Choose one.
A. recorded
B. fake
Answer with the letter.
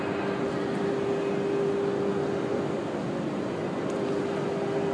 A